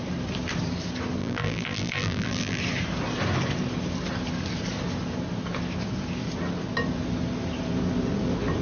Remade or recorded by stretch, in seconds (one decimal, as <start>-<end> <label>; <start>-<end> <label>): 0.0-1.2 recorded; 1.2-2.6 remade; 2.6-8.6 recorded